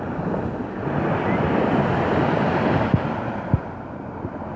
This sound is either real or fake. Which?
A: real